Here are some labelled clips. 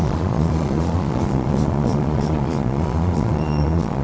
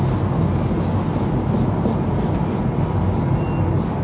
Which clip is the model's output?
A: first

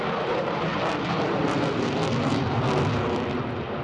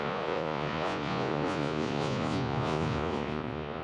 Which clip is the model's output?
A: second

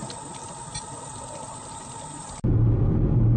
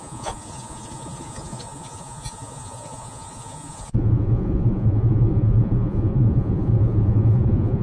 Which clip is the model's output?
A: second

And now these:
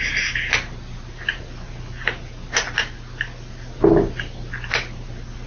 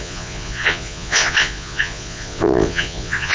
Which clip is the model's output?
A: second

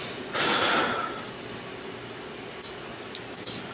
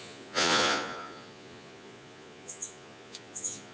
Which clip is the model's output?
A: second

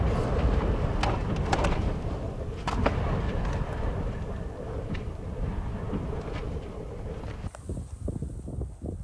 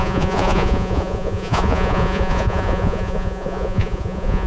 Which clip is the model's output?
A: second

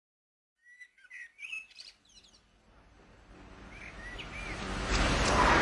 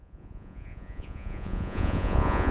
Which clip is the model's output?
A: second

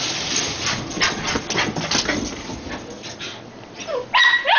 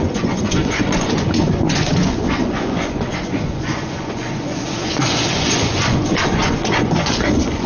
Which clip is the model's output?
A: second